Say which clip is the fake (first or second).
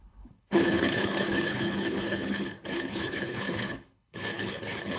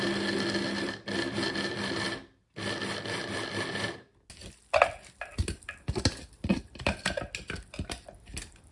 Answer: first